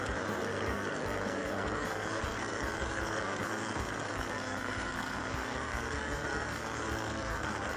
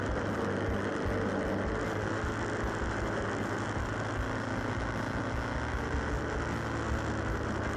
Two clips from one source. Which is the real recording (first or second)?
second